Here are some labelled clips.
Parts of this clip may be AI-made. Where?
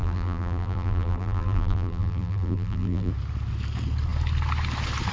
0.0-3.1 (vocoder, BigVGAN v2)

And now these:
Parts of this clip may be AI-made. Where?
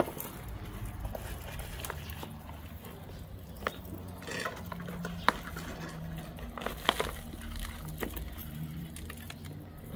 8.4-9.0 (vocoder, BigVGAN v2)